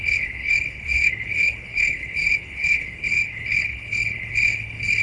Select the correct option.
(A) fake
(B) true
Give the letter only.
A